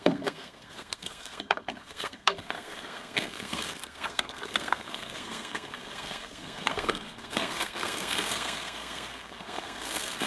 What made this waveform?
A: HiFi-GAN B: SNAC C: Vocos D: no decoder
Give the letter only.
B